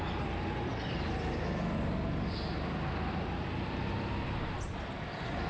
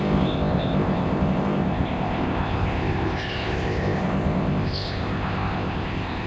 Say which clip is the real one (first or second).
first